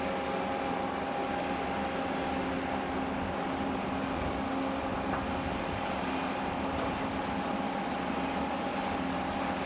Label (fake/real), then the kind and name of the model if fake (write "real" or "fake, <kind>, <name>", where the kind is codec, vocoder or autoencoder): real